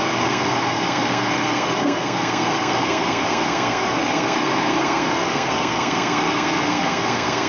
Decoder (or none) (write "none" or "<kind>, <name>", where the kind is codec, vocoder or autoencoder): codec, SNAC